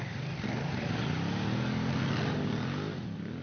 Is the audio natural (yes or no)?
yes